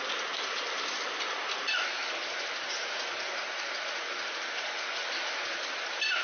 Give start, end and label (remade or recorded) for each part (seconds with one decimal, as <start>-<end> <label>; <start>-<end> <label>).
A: 0.0-6.2 recorded